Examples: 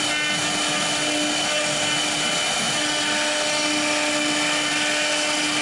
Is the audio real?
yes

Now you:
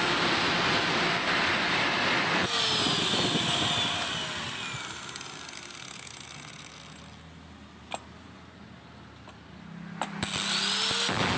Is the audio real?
yes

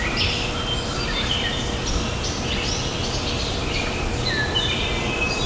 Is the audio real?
yes